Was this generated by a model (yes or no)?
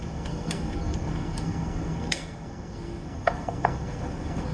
yes